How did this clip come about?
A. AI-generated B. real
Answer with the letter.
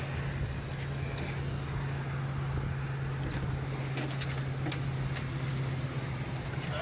B